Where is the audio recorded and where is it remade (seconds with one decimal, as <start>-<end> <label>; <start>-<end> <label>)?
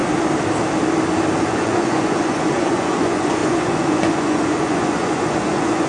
0.0-1.4 recorded; 1.4-5.9 remade